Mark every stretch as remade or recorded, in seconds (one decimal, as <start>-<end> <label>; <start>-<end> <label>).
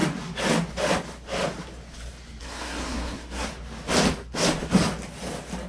0.0-2.4 recorded; 2.4-3.5 remade; 3.5-5.7 recorded